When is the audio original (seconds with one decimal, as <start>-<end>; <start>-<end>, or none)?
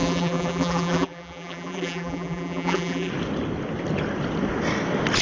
3.1-5.2